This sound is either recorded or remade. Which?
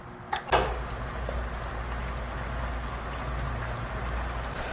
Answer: recorded